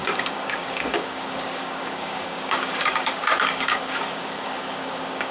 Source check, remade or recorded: remade